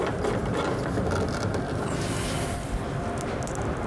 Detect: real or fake real